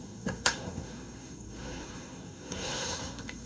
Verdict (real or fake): fake